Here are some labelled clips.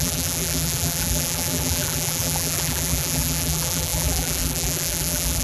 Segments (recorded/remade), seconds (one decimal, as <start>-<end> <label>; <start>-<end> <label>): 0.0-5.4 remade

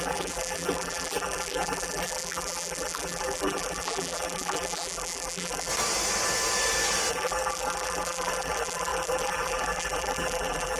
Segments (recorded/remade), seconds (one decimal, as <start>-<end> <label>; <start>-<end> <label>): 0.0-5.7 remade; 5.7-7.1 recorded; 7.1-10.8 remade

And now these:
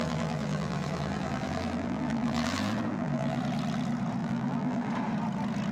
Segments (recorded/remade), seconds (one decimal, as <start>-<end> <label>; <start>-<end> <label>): 0.0-3.4 remade; 3.4-4.2 recorded; 4.2-4.9 remade; 4.9-5.7 recorded

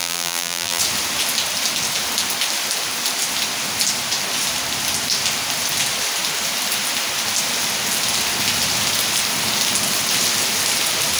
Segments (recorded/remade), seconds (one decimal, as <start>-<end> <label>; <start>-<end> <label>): 0.0-0.8 remade; 0.8-11.2 recorded

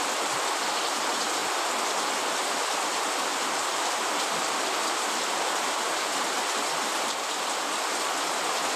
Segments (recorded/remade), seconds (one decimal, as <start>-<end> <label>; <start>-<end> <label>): 0.0-3.3 recorded; 3.3-5.0 remade; 5.0-8.8 recorded